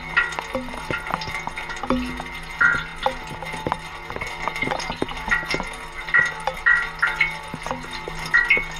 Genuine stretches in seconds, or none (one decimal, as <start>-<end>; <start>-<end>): 0.0-8.8